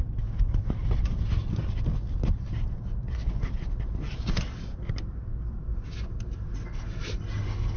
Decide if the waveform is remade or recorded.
recorded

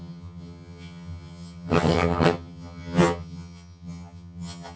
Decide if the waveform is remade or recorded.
remade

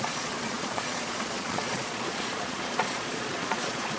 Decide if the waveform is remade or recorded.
remade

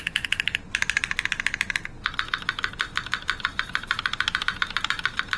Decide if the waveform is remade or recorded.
recorded